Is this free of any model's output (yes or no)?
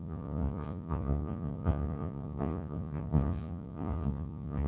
no